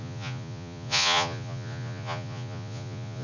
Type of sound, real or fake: fake